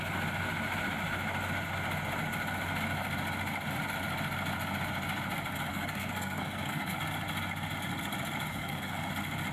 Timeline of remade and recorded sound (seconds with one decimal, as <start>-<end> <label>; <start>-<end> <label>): 0.0-5.7 recorded; 5.7-7.0 remade; 7.0-8.5 recorded; 8.5-9.1 remade; 9.1-9.5 recorded